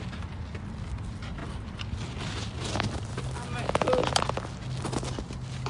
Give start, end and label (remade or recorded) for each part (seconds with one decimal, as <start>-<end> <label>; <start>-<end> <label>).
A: 0.0-5.7 recorded